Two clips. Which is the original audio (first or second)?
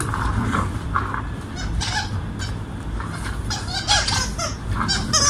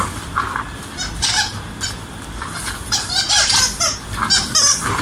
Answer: first